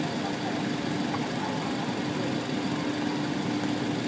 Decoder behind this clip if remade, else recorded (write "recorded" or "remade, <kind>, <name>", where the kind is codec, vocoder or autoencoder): recorded